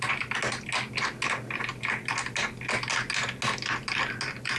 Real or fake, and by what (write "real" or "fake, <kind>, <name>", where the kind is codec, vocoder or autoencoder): real